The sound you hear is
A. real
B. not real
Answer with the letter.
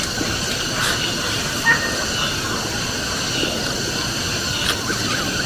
A